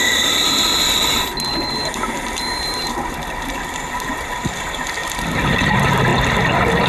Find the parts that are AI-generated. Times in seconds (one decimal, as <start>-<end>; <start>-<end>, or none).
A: 1.5-4.9